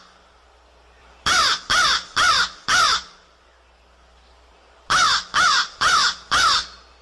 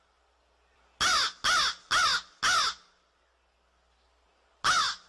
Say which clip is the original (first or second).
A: second